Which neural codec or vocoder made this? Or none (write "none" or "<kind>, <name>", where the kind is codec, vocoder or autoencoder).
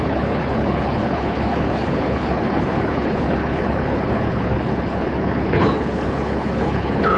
codec, HILCodec